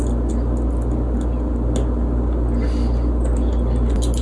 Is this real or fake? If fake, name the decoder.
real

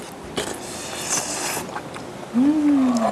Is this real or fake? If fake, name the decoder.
real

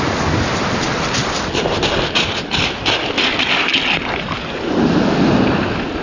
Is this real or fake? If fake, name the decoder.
real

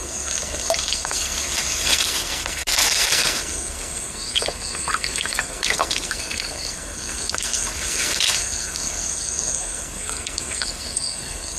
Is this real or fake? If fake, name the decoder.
fake, codec, SNAC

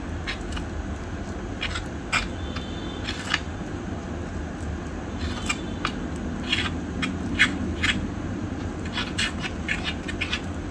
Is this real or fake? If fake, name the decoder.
real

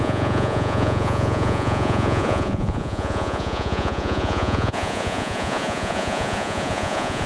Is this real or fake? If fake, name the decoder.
fake, vocoder, Vocos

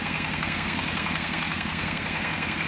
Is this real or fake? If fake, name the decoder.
fake, codec, SNAC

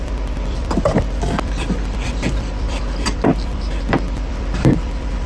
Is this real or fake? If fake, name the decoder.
fake, vocoder, BigVGAN v2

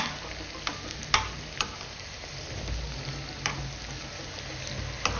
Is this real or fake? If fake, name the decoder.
real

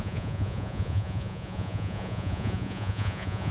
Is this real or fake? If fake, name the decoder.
fake, vocoder, Vocos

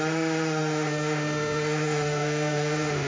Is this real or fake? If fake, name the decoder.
fake, autoencoder, DAC-VAE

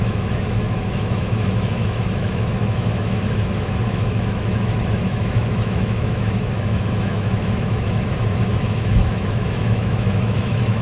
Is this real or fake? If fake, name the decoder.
fake, autoencoder, DAC-VAE